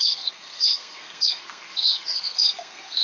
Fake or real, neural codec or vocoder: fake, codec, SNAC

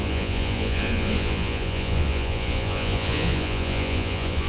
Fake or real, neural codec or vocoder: fake, vocoder, Vocos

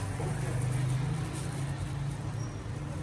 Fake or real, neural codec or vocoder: real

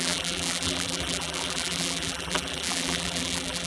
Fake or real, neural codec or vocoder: fake, vocoder, BigVGAN v2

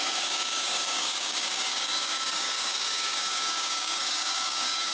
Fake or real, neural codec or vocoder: fake, codec, DAC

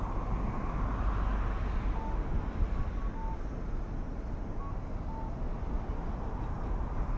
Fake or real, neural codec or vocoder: real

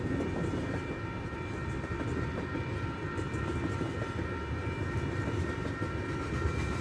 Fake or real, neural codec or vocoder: real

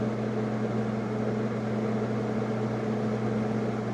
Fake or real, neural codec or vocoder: real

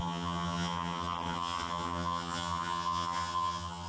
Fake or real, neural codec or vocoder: fake, vocoder, HiFi-GAN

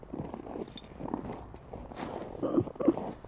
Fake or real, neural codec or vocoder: real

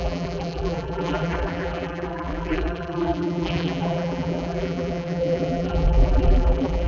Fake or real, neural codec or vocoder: fake, vocoder, BigVGAN v2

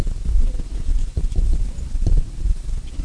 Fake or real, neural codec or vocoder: fake, vocoder, BigVGAN v2